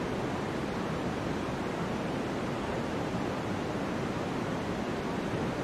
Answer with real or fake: real